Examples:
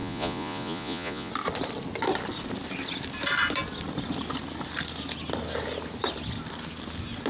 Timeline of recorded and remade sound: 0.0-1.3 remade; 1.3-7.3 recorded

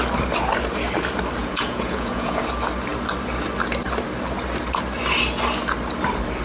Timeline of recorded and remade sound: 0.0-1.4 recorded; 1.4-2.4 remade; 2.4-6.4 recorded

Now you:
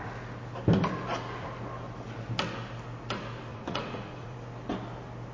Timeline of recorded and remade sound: 0.0-3.5 recorded; 3.5-4.4 remade; 4.4-5.3 recorded

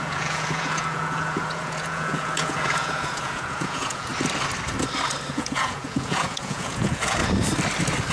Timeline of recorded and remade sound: 0.0-4.1 remade; 4.1-5.3 recorded; 5.3-7.2 remade; 7.2-8.1 recorded

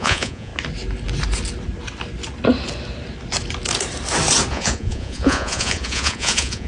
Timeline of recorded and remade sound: 0.0-0.5 remade; 0.5-4.5 recorded; 4.5-6.7 remade

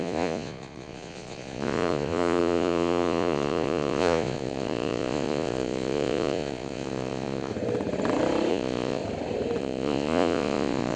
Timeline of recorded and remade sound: 0.0-7.5 remade; 7.5-8.5 recorded; 8.5-9.0 remade; 9.0-9.6 recorded; 9.6-11.0 remade

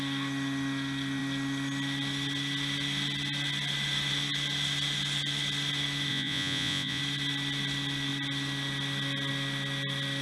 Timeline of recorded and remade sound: 0.0-6.1 recorded; 6.1-7.0 remade; 7.0-10.2 recorded